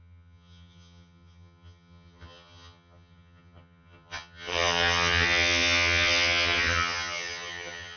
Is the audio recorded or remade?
remade